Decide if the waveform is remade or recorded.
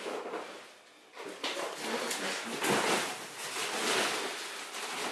recorded